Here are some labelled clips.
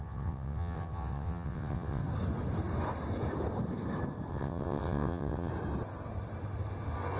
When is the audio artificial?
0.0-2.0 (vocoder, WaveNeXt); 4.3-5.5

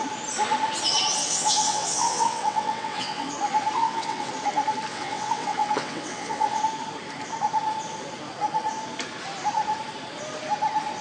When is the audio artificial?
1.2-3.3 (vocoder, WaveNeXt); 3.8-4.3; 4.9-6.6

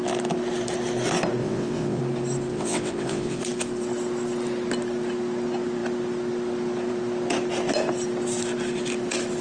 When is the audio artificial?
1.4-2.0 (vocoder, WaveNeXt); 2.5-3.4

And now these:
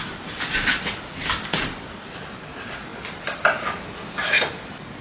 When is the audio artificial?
none

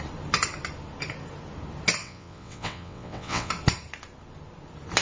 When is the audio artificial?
2.0-3.5 (vocoder, WaveNeXt)

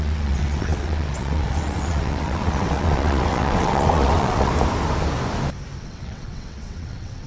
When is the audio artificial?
0.0-4.5 (vocoder, WaveNeXt); 5.8-7.3

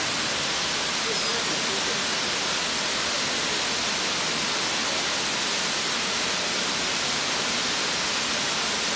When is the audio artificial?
none